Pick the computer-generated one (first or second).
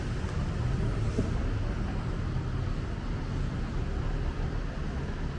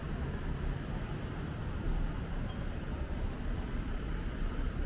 second